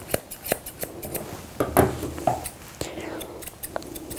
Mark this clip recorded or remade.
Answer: recorded